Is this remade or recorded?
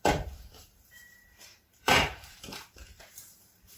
remade